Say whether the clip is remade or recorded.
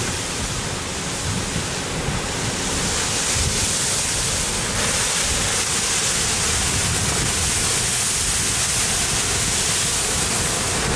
recorded